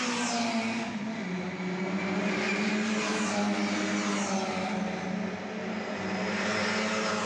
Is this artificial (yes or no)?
no